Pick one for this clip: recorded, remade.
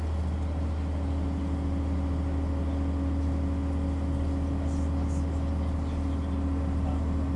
recorded